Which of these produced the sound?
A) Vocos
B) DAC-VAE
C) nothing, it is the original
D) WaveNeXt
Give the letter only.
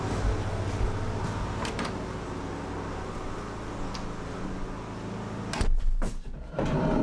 C